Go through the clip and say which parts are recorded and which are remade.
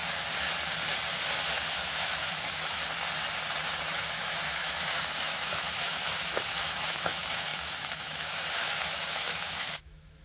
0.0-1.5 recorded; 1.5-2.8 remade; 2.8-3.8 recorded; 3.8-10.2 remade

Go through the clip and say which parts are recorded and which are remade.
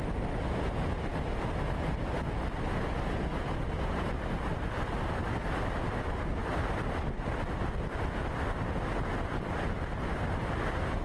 0.0-11.0 recorded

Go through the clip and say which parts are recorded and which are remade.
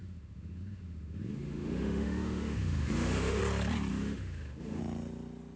0.0-3.4 remade; 3.4-3.9 recorded; 3.9-4.8 remade; 4.8-5.6 recorded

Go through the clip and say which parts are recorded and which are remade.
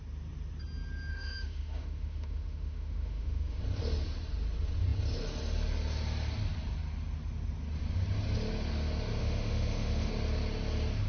0.0-1.1 recorded; 1.1-3.6 remade; 3.6-9.2 recorded; 9.2-10.1 remade; 10.1-11.1 recorded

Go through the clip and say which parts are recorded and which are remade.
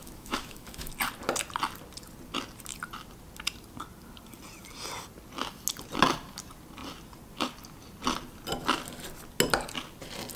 0.0-0.9 remade; 0.9-10.4 recorded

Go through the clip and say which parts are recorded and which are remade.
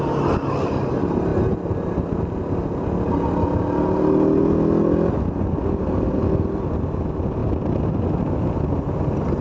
0.0-9.4 recorded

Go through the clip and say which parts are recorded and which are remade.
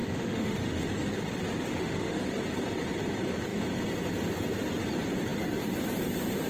0.0-0.9 remade; 0.9-1.7 recorded; 1.7-2.2 remade; 2.2-6.5 recorded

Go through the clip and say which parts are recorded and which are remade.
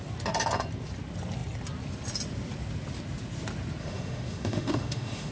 0.0-3.8 recorded; 3.8-5.3 remade